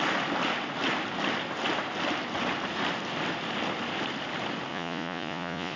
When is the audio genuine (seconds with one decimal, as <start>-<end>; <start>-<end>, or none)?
0.0-4.7